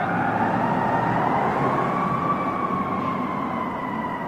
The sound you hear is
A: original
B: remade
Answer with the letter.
A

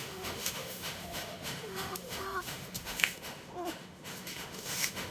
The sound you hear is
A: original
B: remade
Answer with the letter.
B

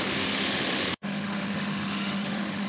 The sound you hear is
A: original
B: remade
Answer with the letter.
B